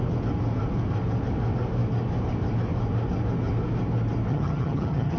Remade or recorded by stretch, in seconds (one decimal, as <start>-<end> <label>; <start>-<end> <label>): 0.0-4.3 recorded; 4.3-5.2 remade